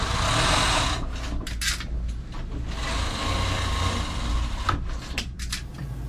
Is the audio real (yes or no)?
yes